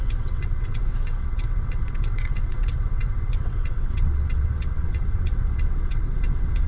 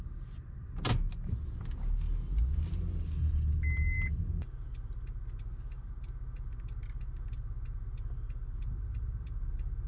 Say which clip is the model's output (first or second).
first